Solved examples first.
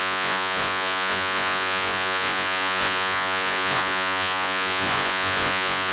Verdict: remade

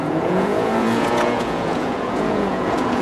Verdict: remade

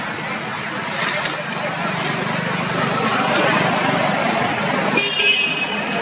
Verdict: recorded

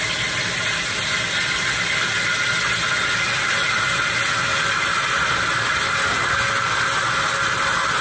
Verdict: recorded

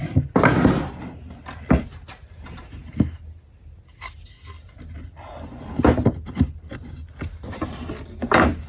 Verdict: recorded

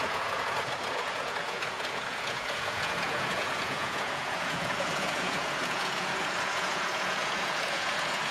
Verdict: remade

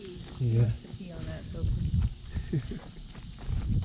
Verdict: recorded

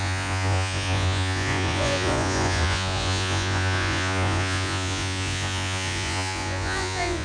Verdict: remade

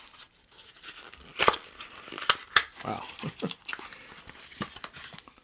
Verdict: recorded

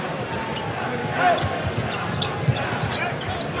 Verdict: recorded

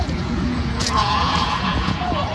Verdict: remade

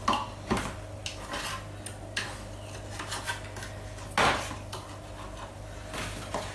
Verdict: recorded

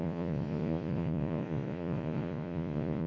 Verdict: remade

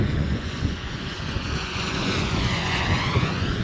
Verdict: remade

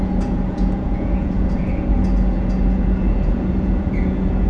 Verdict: remade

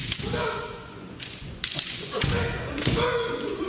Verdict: remade